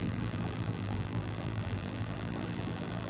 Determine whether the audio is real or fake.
fake